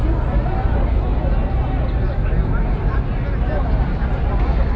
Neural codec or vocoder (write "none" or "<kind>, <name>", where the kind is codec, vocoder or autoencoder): none